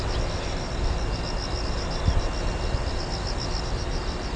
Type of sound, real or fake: real